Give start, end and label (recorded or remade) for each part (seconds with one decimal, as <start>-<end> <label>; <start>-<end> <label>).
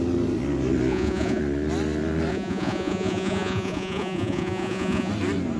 0.0-0.9 recorded; 0.9-1.4 remade; 1.4-2.3 recorded; 2.3-5.1 remade; 5.1-5.6 recorded